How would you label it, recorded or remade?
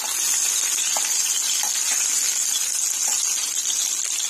recorded